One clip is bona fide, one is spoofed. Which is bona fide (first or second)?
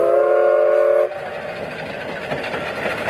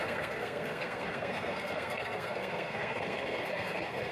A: first